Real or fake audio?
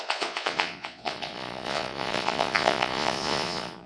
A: fake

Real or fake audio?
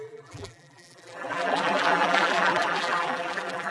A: fake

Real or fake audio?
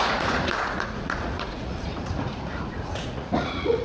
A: fake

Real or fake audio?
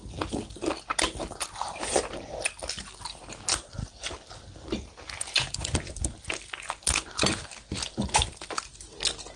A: real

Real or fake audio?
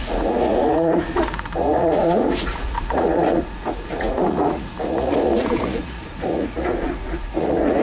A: fake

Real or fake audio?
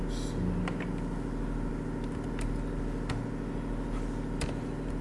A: real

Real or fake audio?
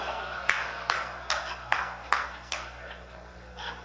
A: fake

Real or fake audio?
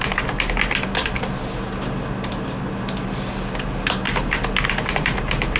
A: real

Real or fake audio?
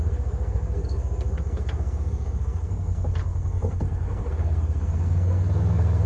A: fake